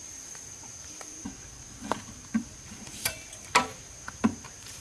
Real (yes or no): no